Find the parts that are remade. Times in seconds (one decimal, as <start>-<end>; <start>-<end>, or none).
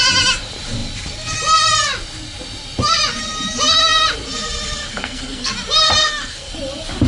4.9-5.5; 6.0-6.5